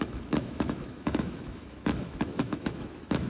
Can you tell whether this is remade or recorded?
remade